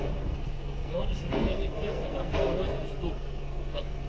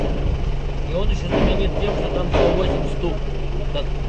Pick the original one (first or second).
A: second